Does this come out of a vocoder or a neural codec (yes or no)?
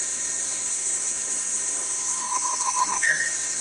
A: yes